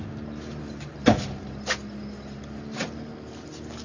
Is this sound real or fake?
real